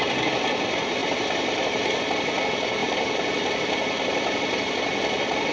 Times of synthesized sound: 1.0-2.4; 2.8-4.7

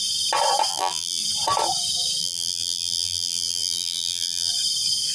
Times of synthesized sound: 0.7-1.2; 2.2-4.5

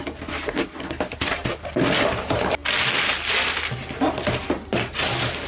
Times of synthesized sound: none